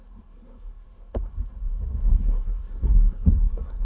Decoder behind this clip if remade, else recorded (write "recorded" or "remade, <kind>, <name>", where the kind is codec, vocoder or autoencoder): remade, codec, SNAC